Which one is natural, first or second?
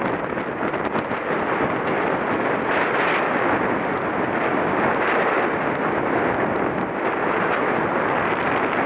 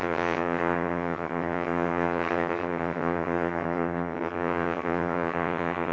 first